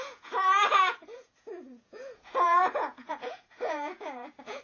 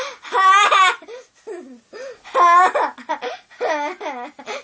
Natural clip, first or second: second